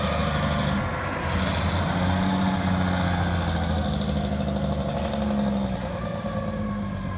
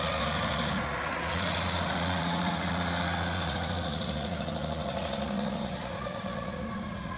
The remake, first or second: second